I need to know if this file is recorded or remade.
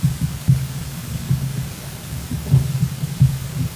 remade